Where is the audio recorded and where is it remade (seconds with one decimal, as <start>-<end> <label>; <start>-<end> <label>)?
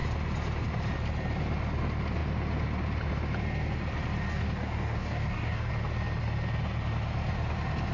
0.0-4.3 recorded; 4.3-5.7 remade; 5.7-7.9 recorded